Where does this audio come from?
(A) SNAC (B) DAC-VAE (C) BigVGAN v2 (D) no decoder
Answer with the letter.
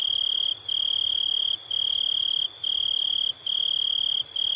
D